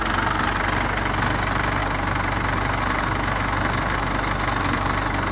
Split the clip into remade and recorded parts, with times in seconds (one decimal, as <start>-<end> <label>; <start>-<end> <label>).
0.0-5.3 recorded